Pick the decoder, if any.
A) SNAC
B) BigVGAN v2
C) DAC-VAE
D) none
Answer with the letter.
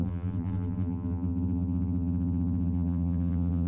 B